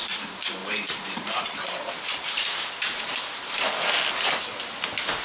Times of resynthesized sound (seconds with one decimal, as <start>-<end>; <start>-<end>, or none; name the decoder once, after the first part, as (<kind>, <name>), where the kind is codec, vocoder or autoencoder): 0.6-3.7 (vocoder, BigVGAN v2)